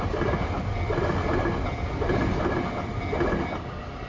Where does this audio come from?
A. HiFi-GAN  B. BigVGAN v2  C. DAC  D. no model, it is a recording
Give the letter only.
D